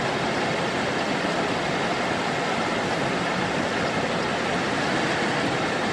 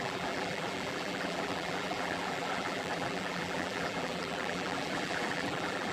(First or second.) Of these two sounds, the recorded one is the first